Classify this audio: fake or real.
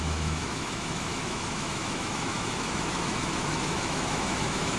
fake